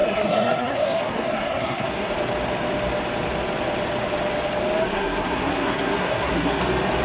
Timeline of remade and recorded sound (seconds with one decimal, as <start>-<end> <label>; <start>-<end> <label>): 0.0-2.1 remade; 2.1-4.9 recorded; 4.9-6.6 remade; 6.6-7.0 recorded

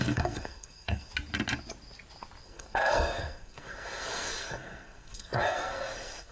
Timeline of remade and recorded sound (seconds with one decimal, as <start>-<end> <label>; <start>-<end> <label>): 0.0-1.1 remade; 1.1-2.4 recorded; 2.4-6.3 remade

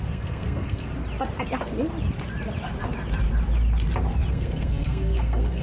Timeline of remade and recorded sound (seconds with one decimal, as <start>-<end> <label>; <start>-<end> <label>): 0.0-0.9 remade; 0.9-4.3 recorded; 4.3-5.6 remade

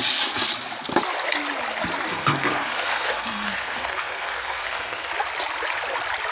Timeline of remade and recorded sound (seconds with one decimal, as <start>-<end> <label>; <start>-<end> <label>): 0.0-2.1 recorded; 2.1-5.1 remade; 5.1-6.3 recorded

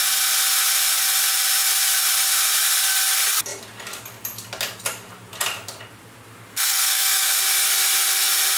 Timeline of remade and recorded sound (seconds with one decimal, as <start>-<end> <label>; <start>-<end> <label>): 0.0-6.5 recorded; 6.5-7.4 remade; 7.4-8.6 recorded

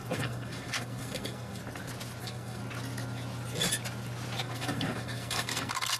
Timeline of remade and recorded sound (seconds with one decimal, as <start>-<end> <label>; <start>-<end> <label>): 0.0-1.6 remade; 1.6-2.2 recorded; 2.2-2.6 remade; 2.6-4.4 recorded; 4.4-6.0 remade

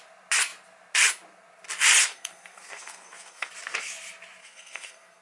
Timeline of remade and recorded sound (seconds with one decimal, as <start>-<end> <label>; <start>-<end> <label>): 0.0-2.0 recorded; 2.0-3.5 remade; 3.5-4.4 recorded; 4.4-5.2 remade